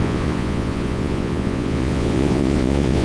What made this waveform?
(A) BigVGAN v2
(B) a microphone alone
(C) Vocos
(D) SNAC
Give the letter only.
C